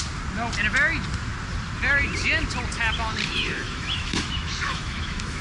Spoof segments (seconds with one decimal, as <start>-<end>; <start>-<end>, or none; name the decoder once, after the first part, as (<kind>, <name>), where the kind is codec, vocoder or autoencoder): 3.2-5.4 (autoencoder, DAC-VAE)